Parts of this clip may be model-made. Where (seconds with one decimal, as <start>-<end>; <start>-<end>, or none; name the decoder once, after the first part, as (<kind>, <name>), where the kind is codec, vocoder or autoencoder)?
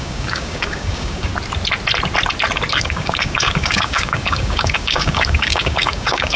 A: 0.0-1.3 (codec, DAC); 2.7-6.4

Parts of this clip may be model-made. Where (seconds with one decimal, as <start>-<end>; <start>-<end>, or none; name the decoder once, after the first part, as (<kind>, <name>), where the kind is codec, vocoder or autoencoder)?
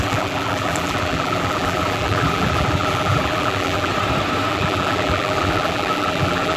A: 0.0-3.9 (vocoder, BigVGAN v2); 4.5-6.6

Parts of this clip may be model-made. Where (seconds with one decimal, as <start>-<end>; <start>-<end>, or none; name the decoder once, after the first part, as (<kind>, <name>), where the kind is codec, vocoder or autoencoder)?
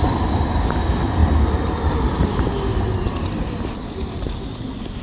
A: none